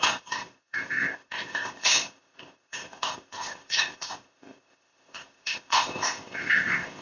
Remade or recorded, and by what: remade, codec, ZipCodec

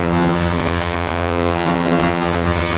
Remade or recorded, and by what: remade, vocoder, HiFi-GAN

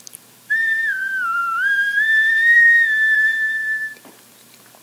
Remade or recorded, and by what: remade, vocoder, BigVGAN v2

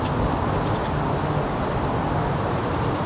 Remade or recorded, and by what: recorded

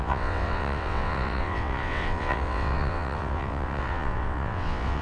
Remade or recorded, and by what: remade, vocoder, WaveNeXt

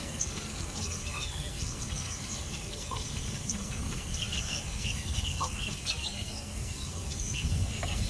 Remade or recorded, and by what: remade, codec, SNAC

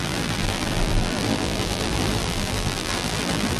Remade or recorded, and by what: remade, vocoder, BigVGAN v2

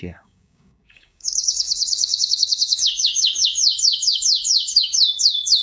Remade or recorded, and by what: remade, codec, DAC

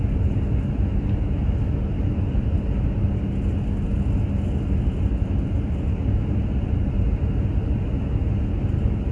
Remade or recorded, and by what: recorded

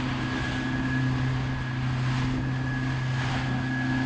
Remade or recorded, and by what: recorded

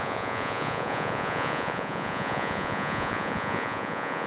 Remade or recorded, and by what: remade, vocoder, Vocos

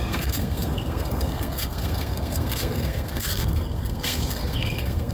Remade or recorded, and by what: remade, codec, SNAC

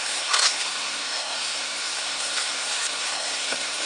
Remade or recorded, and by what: remade, codec, SNAC